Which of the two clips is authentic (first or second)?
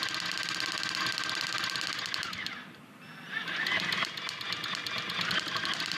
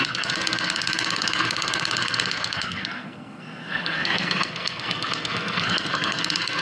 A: first